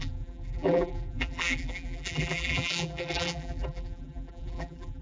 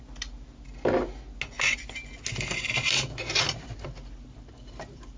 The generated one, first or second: first